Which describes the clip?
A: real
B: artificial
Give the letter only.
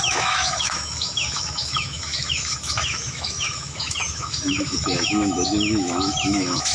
B